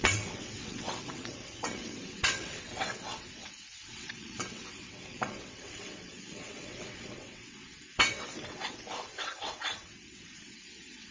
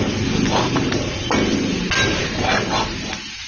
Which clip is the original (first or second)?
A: second